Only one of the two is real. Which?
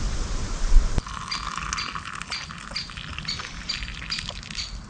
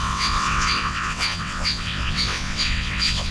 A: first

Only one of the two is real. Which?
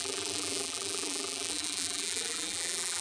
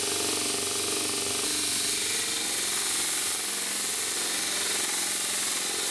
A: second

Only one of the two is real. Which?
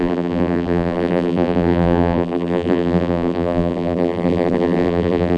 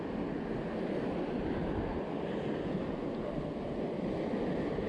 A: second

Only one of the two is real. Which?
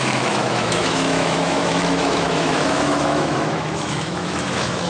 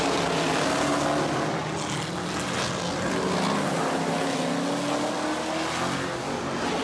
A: second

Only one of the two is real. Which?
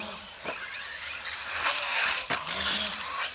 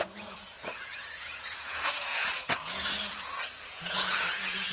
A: first